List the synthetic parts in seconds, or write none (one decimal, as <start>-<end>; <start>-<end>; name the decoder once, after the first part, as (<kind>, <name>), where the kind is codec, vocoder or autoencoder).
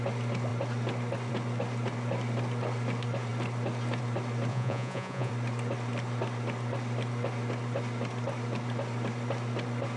4.5-5.3 (vocoder, Vocos)